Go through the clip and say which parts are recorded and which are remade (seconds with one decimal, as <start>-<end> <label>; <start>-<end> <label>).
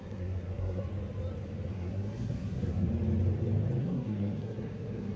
0.0-0.8 remade; 0.8-1.7 recorded; 1.7-2.9 remade; 2.9-3.8 recorded; 3.8-5.2 remade